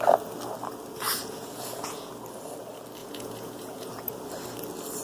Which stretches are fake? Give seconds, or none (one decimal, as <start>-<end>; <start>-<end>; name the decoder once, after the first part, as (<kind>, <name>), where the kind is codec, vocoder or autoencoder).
1.2-2.1 (vocoder, Vocos); 3.0-4.1